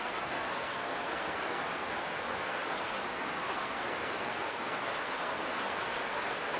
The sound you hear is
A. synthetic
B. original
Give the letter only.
A